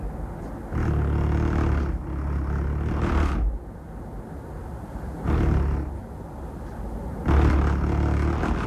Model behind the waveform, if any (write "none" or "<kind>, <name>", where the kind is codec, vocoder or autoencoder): none